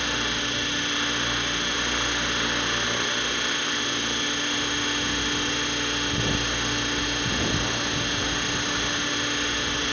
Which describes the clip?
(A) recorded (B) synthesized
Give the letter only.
A